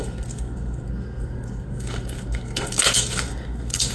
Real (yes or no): no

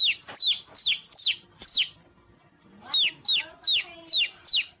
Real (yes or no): yes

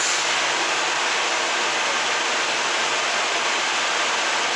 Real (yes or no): yes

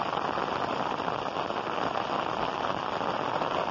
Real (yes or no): yes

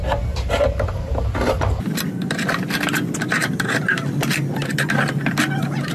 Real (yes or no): yes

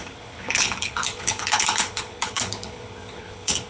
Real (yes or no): no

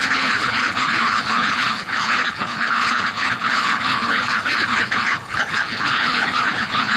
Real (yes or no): no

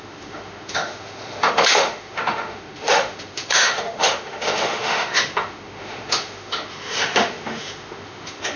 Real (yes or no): no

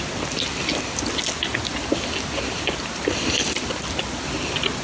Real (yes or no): yes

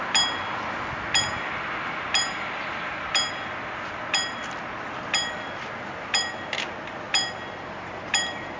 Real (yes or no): yes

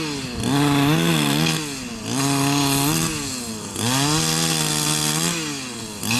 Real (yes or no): yes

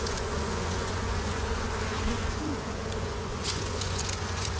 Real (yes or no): no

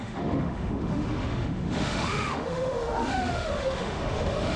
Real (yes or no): no